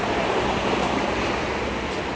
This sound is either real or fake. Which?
real